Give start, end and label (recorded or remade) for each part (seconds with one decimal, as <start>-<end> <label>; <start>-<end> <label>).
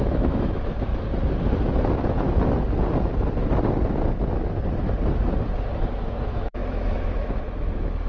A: 0.0-0.9 remade; 0.9-5.8 recorded; 5.8-8.1 remade